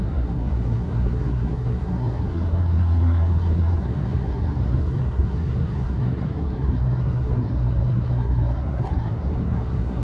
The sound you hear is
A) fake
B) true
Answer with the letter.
A